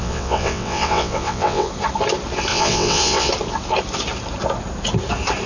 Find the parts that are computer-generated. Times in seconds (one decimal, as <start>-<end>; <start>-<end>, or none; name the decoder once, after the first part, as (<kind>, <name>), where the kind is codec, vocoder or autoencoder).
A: 0.0-1.7 (vocoder, WaveNeXt); 2.5-3.3